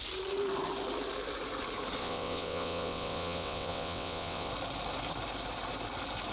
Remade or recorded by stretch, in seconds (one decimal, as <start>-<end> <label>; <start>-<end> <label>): 0.0-2.0 recorded; 2.0-4.5 remade; 4.5-6.3 recorded